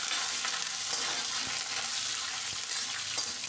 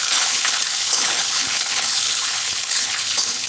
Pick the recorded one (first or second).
first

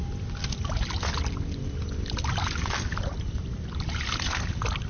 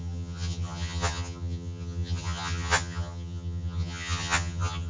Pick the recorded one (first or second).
first